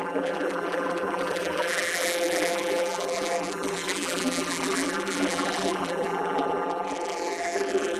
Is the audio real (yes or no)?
no